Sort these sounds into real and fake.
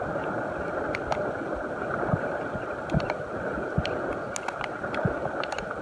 real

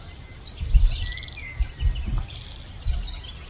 real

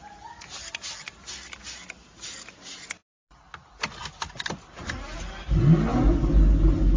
real